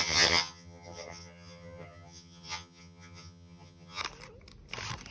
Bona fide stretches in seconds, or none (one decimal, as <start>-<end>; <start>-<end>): 4.0-5.1